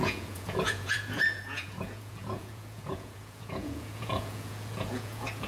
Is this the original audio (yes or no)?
no